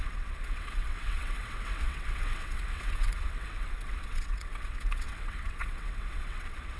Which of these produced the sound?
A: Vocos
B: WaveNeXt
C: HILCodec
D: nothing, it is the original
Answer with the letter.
B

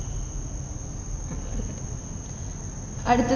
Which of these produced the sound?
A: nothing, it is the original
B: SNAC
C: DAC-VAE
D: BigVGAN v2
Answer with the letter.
A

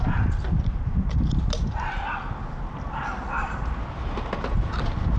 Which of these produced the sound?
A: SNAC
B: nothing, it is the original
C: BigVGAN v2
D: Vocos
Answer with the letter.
B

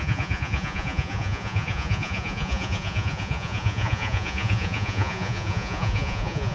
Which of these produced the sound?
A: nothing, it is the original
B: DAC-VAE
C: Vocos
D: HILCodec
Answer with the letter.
C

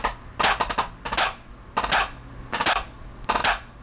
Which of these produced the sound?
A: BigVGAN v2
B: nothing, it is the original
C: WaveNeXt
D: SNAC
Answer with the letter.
B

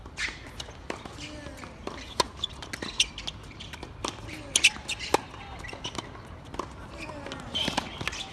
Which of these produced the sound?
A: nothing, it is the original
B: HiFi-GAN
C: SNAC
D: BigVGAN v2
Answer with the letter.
A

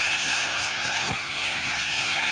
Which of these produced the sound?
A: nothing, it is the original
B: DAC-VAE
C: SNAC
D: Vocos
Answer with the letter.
C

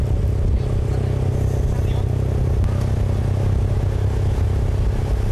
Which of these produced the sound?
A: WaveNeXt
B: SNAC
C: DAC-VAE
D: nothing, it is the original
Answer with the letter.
D